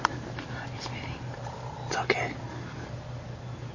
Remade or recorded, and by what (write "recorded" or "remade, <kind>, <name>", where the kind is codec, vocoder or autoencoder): remade, vocoder, BigVGAN v2